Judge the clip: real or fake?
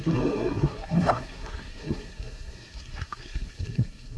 fake